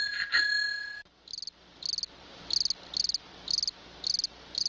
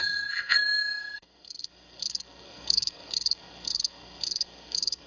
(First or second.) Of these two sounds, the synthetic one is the second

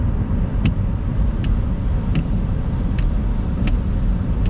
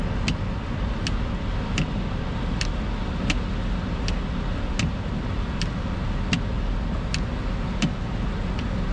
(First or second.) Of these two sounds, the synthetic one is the first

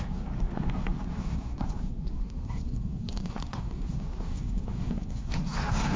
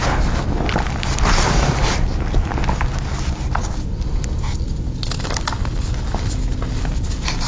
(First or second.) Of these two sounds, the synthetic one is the first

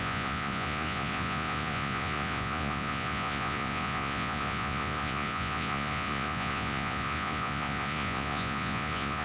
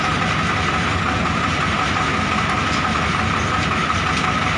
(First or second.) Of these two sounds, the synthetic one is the first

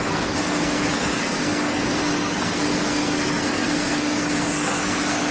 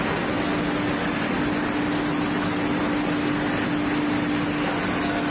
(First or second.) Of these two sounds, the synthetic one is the first